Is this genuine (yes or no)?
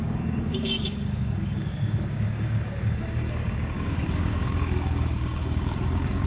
no